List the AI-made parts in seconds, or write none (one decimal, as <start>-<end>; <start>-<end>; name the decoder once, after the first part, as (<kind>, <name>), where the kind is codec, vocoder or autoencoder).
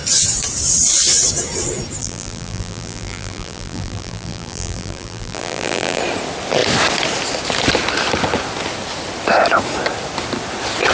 2.0-6.0 (vocoder, BigVGAN v2)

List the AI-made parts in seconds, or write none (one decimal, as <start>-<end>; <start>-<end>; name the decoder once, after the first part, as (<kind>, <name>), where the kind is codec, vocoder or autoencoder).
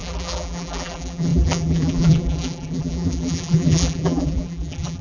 0.0-5.0 (vocoder, BigVGAN v2)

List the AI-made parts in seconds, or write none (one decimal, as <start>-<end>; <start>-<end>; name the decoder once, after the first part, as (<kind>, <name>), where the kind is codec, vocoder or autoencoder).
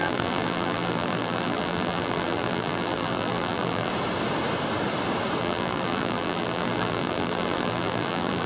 0.0-3.9 (vocoder, BigVGAN v2); 5.4-8.5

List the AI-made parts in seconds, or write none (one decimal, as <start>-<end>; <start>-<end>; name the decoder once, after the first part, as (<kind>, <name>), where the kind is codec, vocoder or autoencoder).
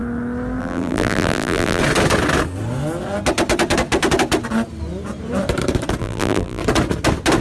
0.6-1.8 (vocoder, BigVGAN v2); 6.0-6.6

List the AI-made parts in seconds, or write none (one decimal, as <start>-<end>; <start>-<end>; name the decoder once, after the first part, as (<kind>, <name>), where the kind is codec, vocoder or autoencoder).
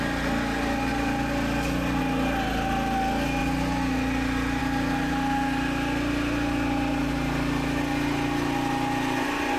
none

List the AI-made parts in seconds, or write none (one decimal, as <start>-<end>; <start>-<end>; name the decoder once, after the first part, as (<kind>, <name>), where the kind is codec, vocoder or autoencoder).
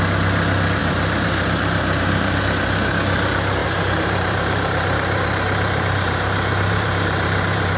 0.8-2.4 (vocoder, BigVGAN v2); 3.6-7.8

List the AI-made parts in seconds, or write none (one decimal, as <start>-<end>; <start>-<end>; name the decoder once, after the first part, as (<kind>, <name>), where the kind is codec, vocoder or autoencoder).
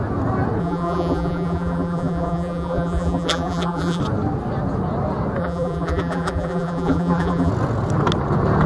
0.6-4.0 (vocoder, BigVGAN v2); 5.4-7.5